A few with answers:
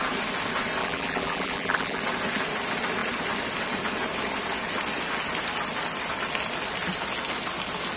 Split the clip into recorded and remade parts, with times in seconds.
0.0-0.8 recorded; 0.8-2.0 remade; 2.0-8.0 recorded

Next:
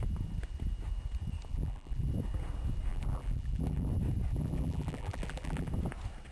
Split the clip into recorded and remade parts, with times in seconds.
0.0-1.5 recorded; 1.5-2.1 remade; 2.1-2.9 recorded; 2.9-3.9 remade; 3.9-4.3 recorded; 4.3-5.7 remade; 5.7-6.3 recorded

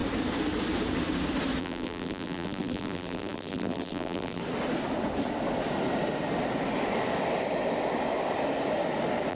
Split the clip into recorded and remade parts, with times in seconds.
0.0-1.6 recorded; 1.6-4.4 remade; 4.4-9.3 recorded

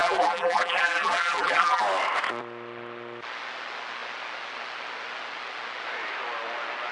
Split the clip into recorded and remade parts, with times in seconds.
0.0-1.8 remade; 1.8-6.9 recorded

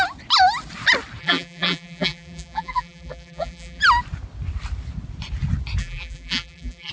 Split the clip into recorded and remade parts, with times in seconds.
0.0-1.2 recorded; 1.2-3.8 remade; 3.8-5.8 recorded; 5.8-6.9 remade

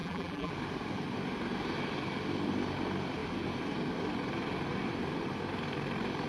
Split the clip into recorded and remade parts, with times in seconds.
0.0-0.5 remade; 0.5-6.3 recorded

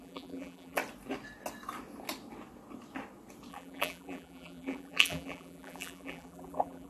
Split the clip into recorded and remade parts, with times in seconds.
0.0-0.8 remade; 0.8-3.5 recorded; 3.5-6.9 remade

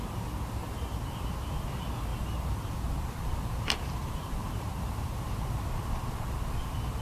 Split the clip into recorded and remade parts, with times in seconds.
0.0-2.1 recorded; 2.1-5.8 remade; 5.8-7.0 recorded